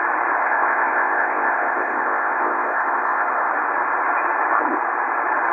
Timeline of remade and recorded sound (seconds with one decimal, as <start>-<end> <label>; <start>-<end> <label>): 0.0-0.4 recorded; 0.4-3.5 remade; 3.5-5.5 recorded